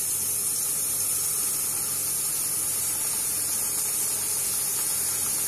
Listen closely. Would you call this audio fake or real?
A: real